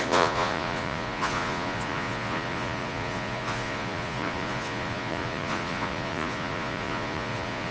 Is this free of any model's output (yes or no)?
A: no